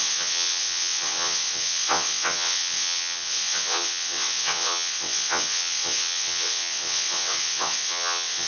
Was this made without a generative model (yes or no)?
no